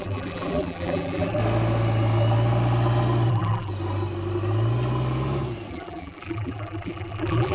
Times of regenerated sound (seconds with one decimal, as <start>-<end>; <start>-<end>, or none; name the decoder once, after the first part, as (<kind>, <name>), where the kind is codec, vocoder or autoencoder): 0.0-1.4 (vocoder, BigVGAN v2); 3.3-3.7; 5.7-7.5